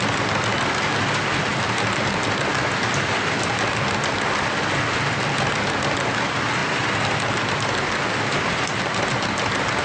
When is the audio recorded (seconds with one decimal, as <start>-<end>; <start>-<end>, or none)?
0.0-9.8